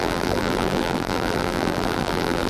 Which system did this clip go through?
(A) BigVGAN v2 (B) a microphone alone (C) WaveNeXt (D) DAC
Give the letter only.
A